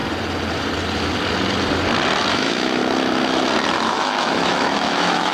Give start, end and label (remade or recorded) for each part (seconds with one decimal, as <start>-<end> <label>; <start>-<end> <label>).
0.0-2.3 recorded; 2.3-2.8 remade; 2.8-3.9 recorded; 3.9-5.3 remade